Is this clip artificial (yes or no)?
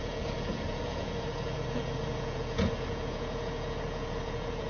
yes